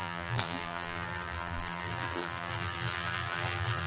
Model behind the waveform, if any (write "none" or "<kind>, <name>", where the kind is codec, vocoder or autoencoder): vocoder, BigVGAN v2